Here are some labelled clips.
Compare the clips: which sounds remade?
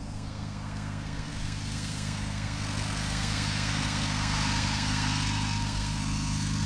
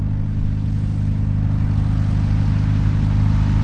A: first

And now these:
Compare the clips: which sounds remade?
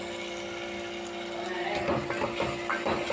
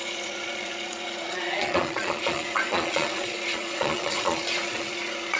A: second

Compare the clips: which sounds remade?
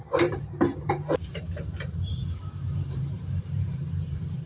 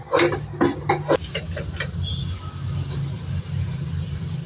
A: first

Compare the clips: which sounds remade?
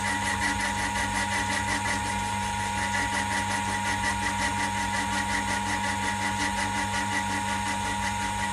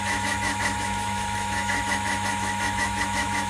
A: second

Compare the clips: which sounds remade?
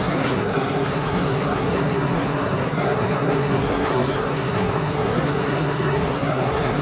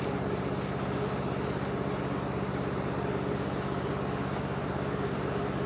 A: first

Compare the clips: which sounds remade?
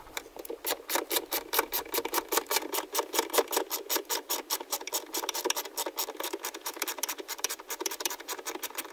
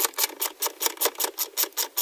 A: first